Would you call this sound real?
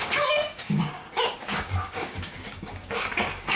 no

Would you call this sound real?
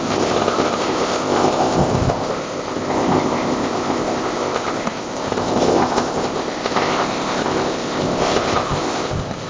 no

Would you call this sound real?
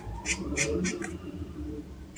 no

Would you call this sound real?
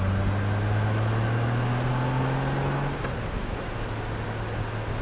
yes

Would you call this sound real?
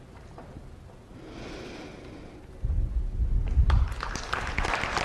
yes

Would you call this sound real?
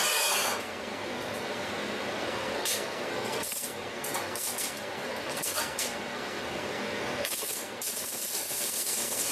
no